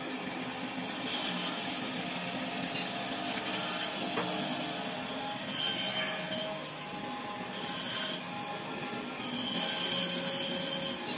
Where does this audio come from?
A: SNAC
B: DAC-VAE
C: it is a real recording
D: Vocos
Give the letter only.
C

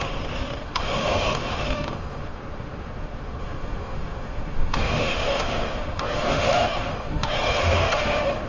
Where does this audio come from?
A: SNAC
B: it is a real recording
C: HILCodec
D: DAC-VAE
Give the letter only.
D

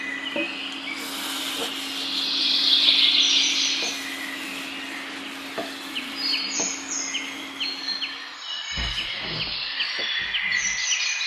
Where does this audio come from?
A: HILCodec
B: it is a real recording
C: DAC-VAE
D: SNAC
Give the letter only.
B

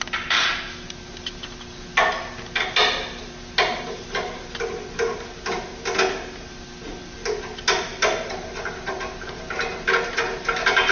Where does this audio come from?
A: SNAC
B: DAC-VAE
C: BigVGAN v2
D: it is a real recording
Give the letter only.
D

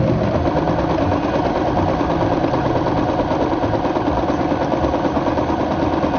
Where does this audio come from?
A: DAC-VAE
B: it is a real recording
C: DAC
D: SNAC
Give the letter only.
B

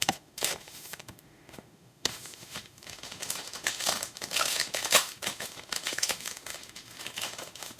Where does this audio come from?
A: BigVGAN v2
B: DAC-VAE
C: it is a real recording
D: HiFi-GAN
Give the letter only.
B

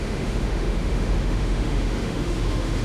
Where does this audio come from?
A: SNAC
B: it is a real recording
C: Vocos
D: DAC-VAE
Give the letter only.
D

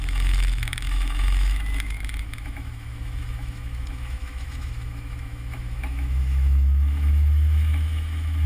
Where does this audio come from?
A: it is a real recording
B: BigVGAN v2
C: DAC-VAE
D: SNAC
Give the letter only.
C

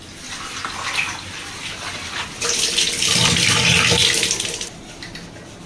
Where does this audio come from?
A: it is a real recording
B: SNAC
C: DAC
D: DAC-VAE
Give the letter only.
A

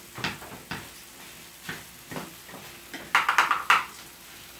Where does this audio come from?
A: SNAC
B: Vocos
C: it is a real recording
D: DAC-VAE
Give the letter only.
C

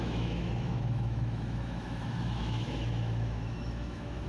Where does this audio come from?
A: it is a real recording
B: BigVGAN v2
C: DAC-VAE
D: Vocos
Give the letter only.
C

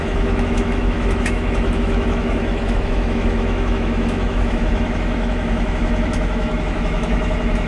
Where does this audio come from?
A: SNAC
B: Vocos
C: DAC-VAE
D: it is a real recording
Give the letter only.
C